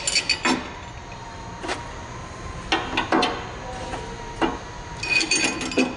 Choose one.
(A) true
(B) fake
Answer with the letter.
A